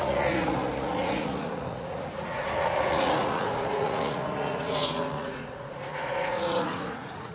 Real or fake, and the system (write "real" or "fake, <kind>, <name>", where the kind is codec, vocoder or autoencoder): fake, vocoder, Vocos